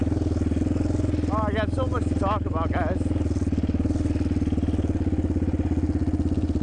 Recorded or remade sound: recorded